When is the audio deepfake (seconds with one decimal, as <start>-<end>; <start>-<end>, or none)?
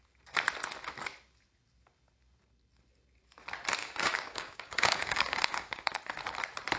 3.8-5.9